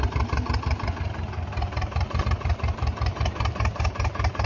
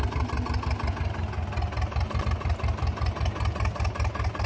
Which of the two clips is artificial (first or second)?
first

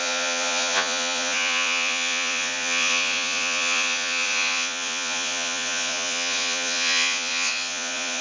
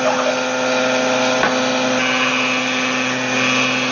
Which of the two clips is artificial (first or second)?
first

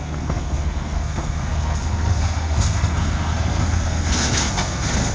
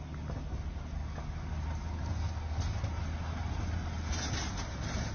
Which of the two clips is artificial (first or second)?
first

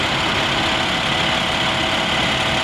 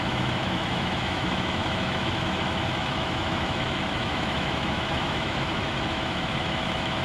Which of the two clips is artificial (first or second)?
second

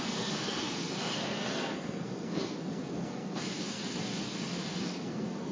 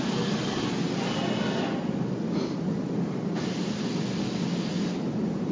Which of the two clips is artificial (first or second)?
first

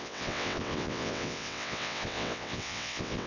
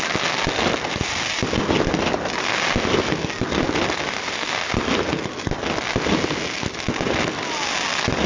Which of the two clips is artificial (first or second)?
first